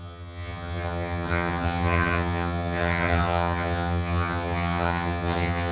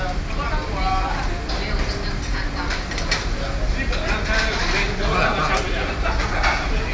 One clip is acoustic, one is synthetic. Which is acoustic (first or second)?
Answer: second